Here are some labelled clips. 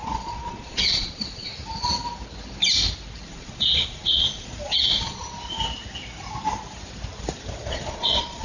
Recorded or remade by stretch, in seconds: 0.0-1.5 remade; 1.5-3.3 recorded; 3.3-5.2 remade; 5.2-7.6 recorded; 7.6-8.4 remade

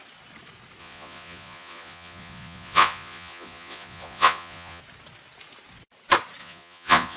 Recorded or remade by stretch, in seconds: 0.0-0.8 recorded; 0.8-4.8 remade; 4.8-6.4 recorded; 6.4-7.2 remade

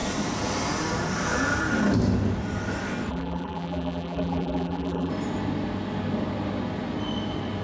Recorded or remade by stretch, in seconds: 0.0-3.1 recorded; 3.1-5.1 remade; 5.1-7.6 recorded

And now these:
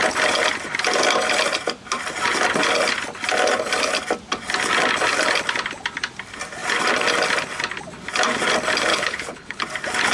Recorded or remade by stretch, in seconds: 0.0-8.9 recorded; 8.9-9.6 remade; 9.6-10.1 recorded

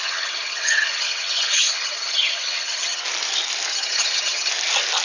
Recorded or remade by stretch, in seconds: 0.0-3.0 remade; 3.0-3.7 recorded; 3.7-4.5 remade; 4.5-5.0 recorded